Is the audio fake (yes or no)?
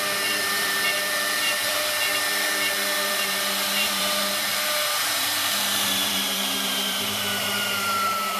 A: yes